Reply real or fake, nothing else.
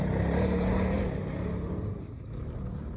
real